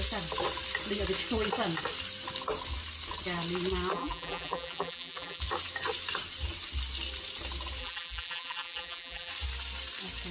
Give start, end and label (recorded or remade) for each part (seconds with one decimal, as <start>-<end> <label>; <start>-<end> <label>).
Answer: 0.0-3.9 recorded; 3.9-5.4 remade; 5.4-7.8 recorded; 7.8-9.3 remade; 9.3-10.3 recorded